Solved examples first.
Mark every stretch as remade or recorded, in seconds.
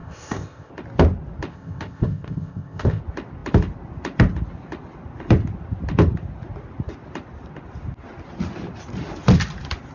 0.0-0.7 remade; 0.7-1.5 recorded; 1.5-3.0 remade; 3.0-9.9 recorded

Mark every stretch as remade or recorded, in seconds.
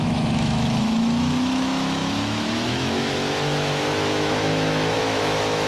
0.0-5.7 remade